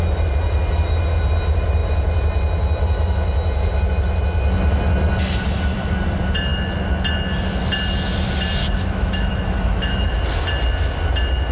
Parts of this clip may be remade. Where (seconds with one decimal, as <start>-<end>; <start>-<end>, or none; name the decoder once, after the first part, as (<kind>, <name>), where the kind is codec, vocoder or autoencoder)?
8.6-10.2 (autoencoder, DAC-VAE)

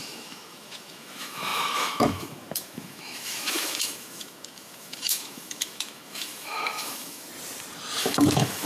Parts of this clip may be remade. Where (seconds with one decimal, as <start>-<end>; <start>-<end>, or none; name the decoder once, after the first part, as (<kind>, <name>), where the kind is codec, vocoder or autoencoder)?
0.0-7.3 (autoencoder, DAC-VAE); 8.0-8.7

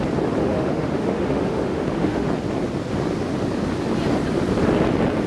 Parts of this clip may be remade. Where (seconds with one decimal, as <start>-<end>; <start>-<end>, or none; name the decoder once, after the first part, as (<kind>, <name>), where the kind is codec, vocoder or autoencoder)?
0.4-2.3 (autoencoder, DAC-VAE)